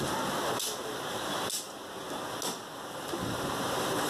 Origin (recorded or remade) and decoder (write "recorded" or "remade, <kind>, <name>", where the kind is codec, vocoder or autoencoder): recorded